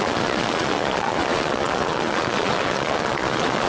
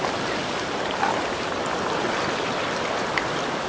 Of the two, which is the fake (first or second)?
first